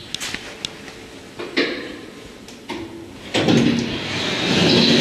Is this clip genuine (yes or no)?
yes